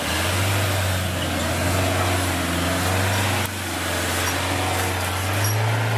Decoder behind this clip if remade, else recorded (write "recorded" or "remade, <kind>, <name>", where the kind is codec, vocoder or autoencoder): recorded